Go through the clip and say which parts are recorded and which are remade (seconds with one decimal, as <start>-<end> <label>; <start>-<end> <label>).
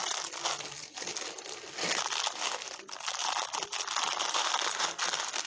0.0-5.5 recorded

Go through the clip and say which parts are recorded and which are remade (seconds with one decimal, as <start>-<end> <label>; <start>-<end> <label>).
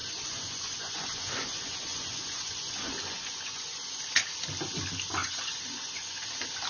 0.0-4.0 remade; 4.0-5.2 recorded; 5.2-6.3 remade; 6.3-6.7 recorded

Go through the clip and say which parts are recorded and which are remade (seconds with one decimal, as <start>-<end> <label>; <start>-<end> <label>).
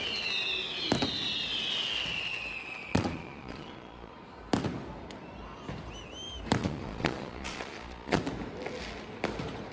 0.0-2.9 recorded; 2.9-4.1 remade; 4.1-6.6 recorded; 6.6-8.2 remade; 8.2-9.7 recorded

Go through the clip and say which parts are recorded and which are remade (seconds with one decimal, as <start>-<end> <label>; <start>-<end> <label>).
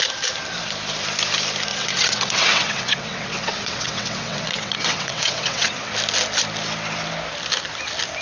0.0-1.7 recorded; 1.7-5.9 remade; 5.9-8.2 recorded